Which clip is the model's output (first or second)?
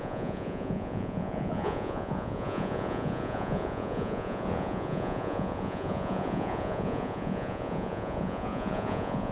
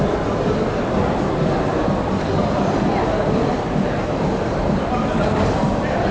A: first